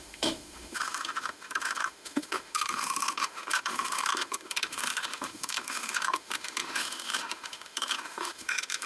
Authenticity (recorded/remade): remade